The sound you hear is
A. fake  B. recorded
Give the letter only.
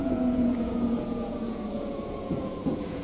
A